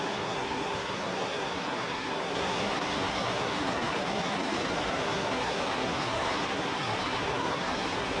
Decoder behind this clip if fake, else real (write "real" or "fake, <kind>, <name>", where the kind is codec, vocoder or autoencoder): fake, codec, SNAC